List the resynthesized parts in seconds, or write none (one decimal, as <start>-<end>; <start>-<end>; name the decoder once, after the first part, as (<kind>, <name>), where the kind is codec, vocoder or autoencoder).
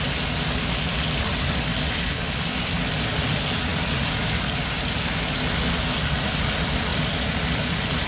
none